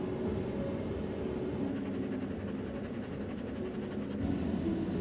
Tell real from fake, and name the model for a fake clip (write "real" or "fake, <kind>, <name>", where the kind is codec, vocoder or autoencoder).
real